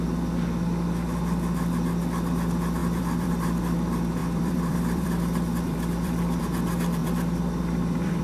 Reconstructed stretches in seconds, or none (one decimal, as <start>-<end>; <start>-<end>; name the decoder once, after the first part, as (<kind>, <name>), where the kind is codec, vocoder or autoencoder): 2.8-3.6 (vocoder, BigVGAN v2); 4.2-6.4; 7.0-8.2